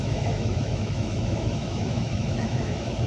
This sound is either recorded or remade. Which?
remade